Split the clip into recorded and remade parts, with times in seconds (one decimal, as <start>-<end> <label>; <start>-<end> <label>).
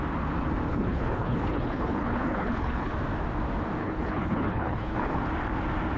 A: 0.0-0.7 recorded; 0.7-2.9 remade; 2.9-3.8 recorded; 3.8-5.2 remade; 5.2-6.0 recorded